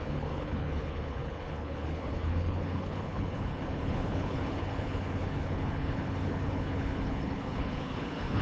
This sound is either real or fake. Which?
fake